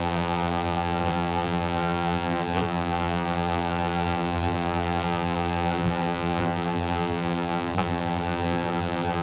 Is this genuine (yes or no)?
no